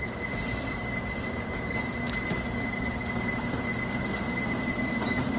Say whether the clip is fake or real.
real